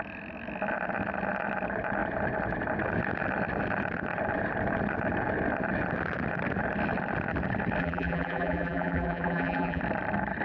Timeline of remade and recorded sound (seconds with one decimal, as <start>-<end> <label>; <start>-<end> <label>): 0.0-7.8 recorded; 7.8-9.8 remade; 9.8-10.4 recorded